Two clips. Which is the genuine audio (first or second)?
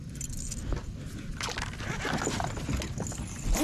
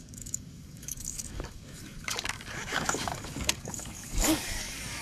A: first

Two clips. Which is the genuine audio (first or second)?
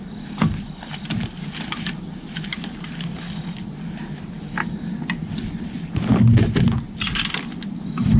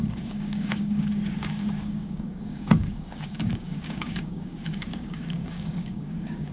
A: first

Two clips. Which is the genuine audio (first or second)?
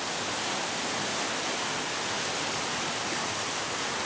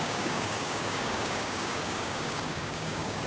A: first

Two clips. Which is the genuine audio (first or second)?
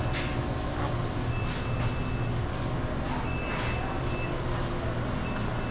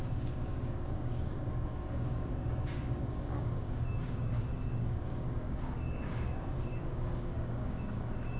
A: first